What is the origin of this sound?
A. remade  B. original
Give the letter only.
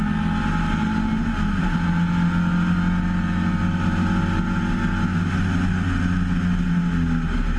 B